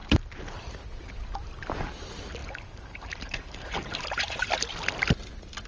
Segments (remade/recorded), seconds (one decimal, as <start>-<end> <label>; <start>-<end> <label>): 0.0-2.4 recorded; 2.4-4.5 remade; 4.5-5.7 recorded